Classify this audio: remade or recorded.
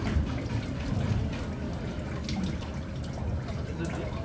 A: recorded